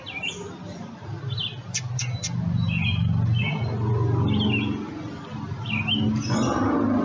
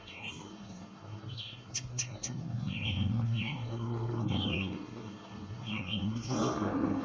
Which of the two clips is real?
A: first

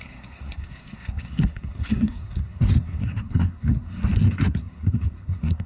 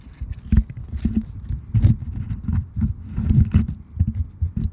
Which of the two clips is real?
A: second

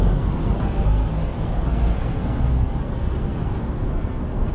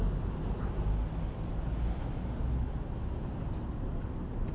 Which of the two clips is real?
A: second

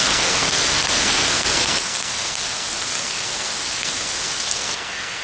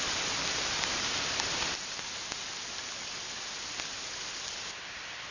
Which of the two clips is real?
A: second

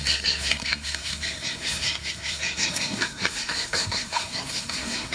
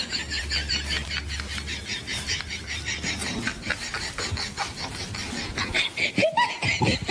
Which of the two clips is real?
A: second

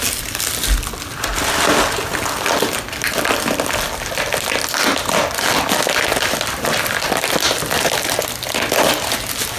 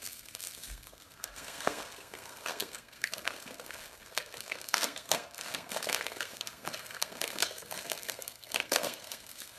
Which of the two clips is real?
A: first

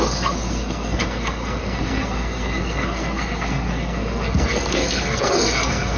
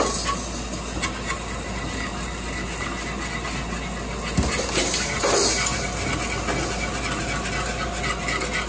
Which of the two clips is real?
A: second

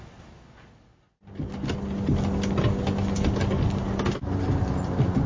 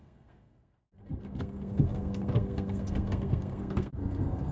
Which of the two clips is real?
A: first